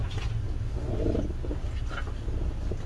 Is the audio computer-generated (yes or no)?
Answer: no